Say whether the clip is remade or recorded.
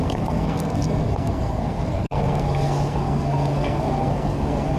remade